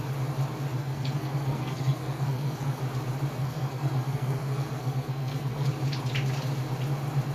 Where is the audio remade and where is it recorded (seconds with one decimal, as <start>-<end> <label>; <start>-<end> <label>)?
0.0-0.8 recorded; 0.8-2.8 remade; 2.8-3.4 recorded; 3.4-5.7 remade; 5.7-7.3 recorded